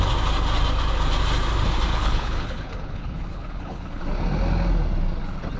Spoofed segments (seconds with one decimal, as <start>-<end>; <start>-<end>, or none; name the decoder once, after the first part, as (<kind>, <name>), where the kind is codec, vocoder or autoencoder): 1.9-4.0 (codec, HILCodec)